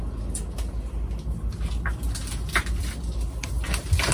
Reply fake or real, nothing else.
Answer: real